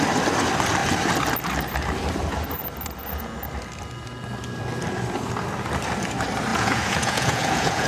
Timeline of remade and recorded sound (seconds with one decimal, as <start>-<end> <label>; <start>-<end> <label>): 0.0-6.5 recorded; 6.5-7.9 remade